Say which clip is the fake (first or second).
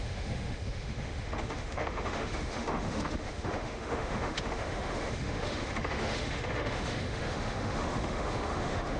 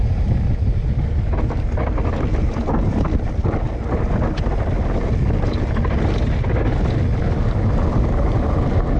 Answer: first